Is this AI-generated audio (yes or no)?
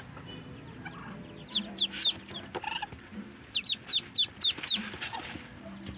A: no